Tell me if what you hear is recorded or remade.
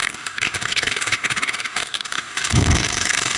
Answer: remade